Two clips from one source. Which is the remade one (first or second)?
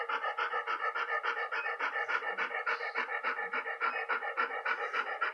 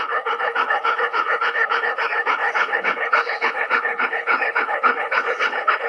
second